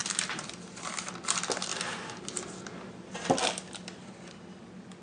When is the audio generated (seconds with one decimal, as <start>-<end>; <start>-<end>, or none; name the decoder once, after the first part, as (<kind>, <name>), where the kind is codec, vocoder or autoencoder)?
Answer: none